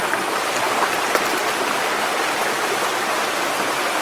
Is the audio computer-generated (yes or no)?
yes